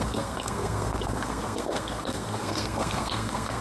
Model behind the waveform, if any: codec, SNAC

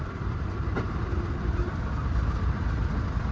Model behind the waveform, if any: none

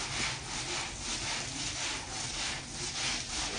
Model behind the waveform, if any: none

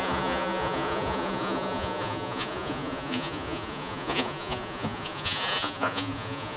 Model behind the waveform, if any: vocoder, Vocos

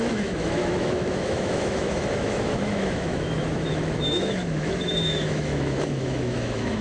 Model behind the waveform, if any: autoencoder, DAC-VAE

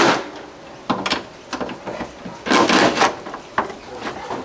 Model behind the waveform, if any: none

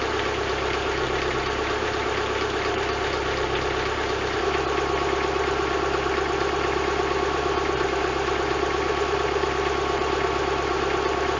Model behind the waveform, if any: vocoder, BigVGAN v2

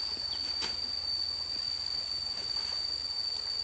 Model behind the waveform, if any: none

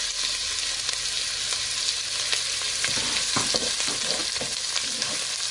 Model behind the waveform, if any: none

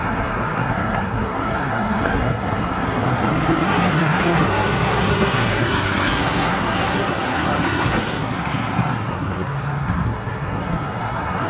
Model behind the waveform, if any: codec, SNAC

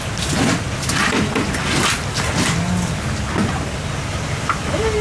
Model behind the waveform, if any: none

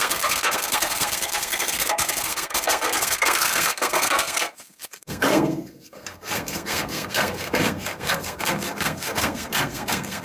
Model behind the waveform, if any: codec, SNAC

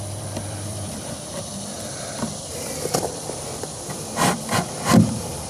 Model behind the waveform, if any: vocoder, BigVGAN v2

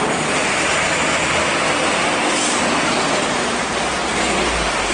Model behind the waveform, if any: none